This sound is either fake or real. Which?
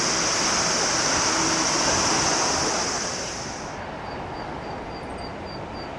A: real